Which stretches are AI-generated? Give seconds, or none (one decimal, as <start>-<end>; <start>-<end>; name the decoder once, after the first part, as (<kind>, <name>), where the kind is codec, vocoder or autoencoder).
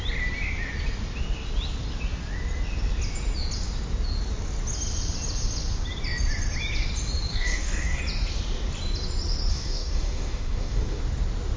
7.3-8.0 (codec, DAC); 9.5-11.0